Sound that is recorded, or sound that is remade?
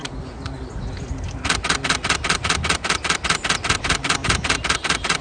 recorded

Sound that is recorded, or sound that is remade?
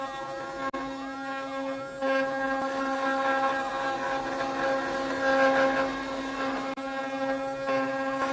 recorded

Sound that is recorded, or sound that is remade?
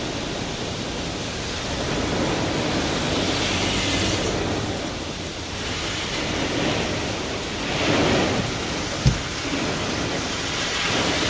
recorded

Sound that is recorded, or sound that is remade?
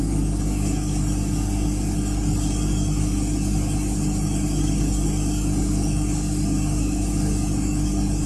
remade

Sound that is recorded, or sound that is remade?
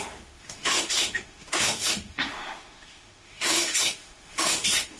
remade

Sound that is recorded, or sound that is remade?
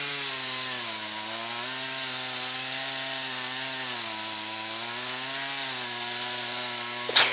recorded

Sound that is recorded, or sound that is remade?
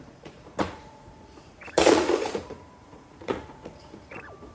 remade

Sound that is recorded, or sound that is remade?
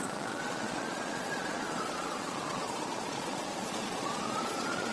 remade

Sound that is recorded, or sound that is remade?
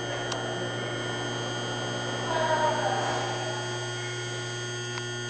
recorded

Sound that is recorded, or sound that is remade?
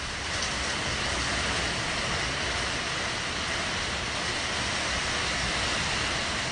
recorded